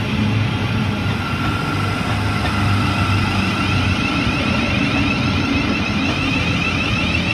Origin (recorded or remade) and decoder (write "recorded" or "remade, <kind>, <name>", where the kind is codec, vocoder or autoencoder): recorded